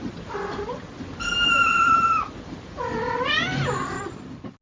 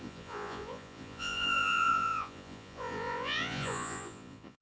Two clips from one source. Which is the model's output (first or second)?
second